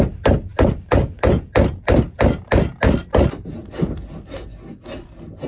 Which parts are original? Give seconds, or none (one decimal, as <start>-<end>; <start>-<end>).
0.0-5.5